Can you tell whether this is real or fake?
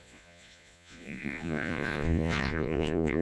fake